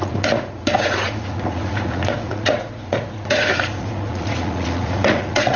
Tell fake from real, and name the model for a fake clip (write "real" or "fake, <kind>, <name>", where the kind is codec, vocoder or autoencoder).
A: fake, vocoder, Vocos